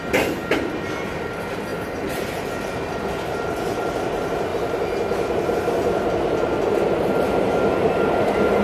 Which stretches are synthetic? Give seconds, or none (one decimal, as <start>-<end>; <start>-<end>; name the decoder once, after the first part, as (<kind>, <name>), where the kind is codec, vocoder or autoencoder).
none